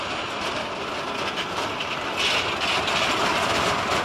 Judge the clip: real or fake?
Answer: real